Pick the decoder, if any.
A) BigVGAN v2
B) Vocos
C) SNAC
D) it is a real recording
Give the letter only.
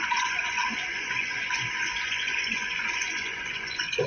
B